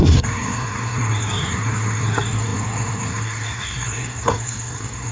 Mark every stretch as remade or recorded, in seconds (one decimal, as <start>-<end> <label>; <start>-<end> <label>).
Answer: 0.0-5.1 remade